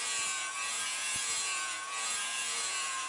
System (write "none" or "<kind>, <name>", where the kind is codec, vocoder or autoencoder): vocoder, Vocos